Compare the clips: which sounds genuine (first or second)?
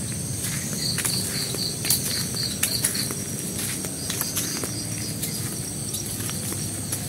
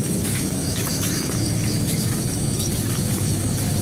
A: first